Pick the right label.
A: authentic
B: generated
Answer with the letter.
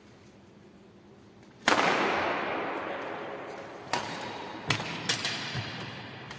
A